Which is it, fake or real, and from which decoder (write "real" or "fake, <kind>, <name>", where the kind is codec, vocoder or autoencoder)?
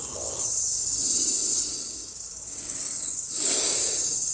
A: fake, codec, DAC